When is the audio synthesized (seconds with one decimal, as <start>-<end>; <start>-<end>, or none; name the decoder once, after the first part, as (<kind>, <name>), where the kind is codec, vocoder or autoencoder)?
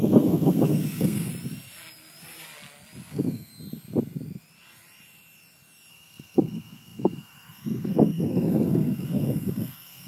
0.0-1.3 (codec, SNAC); 3.1-3.5; 5.9-10.1